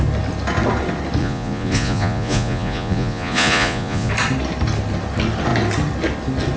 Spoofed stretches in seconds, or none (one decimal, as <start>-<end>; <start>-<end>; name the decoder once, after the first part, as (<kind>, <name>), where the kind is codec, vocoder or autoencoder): 1.2-4.1 (vocoder, Vocos)